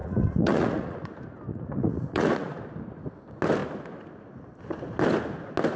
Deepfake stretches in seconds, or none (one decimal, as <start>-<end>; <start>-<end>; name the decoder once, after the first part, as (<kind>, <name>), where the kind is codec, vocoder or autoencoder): 0.0-1.1 (vocoder, Vocos); 1.5-2.6